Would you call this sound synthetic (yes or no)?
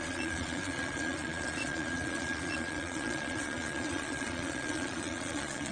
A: yes